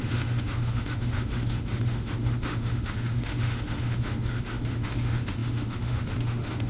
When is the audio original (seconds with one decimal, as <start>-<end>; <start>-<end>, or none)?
none